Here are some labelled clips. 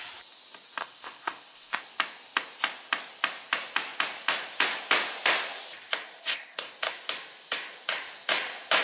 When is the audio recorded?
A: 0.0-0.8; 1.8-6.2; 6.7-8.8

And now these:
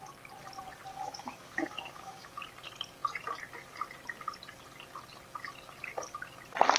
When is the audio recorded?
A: 0.0-0.9; 2.3-6.8

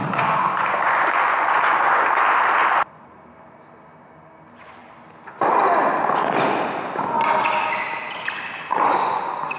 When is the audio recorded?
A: 2.0-8.7; 9.2-9.6

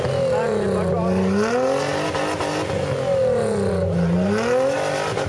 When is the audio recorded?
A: 0.0-5.3

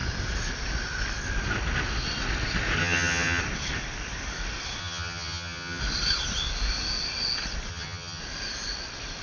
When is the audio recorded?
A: 0.0-2.8; 3.4-4.8; 5.8-7.7; 8.2-9.2